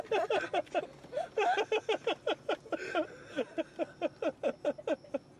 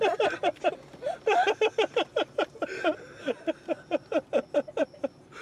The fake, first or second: second